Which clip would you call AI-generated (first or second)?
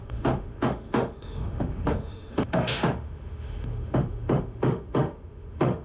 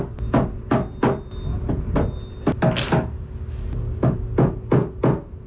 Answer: first